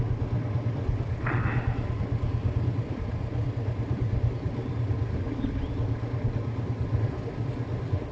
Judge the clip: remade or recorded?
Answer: recorded